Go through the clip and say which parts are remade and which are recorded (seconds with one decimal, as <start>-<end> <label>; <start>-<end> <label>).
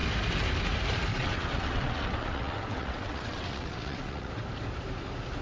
0.0-1.1 recorded; 1.1-4.3 remade; 4.3-5.4 recorded